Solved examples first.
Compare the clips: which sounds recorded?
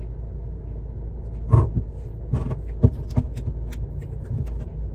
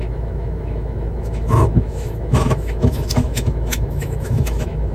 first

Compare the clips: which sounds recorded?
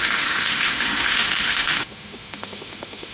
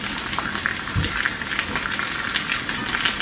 second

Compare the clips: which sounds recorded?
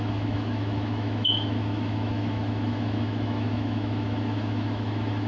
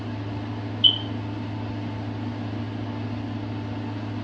second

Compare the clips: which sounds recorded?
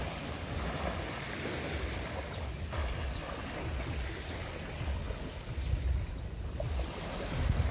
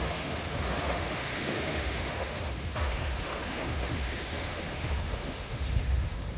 first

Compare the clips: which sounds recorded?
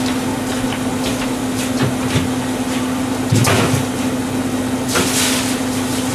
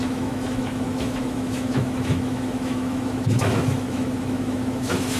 first